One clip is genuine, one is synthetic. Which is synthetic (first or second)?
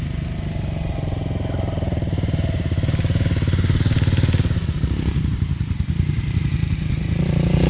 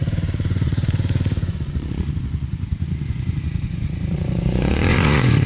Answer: second